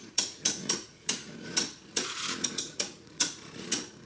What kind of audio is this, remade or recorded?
remade